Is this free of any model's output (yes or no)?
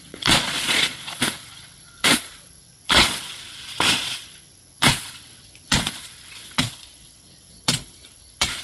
no